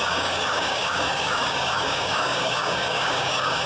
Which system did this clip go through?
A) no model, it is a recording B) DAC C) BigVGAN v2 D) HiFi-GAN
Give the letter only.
B